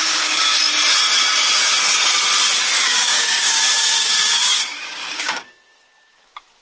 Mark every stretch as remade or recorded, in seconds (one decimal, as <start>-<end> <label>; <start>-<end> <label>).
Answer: 0.0-0.5 remade; 0.5-2.8 recorded; 2.8-6.6 remade